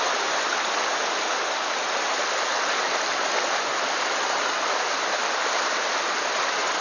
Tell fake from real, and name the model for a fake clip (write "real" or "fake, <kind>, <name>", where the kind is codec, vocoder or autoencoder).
real